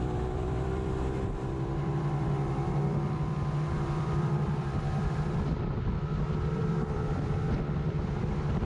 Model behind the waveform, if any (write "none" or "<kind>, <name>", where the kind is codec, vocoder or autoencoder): vocoder, BigVGAN v2